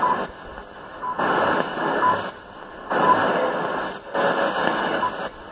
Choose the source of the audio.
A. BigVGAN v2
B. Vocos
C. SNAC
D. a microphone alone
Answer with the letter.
D